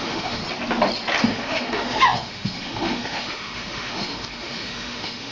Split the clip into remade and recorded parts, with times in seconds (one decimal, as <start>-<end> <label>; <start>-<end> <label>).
0.0-0.4 remade; 0.4-1.2 recorded; 1.2-5.3 remade